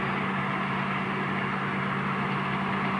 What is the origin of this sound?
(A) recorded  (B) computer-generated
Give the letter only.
A